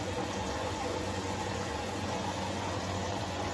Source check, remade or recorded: remade